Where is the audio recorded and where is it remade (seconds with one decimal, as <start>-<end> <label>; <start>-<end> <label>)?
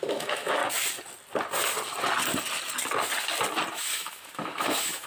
0.0-0.6 remade; 0.6-3.7 recorded; 3.7-5.1 remade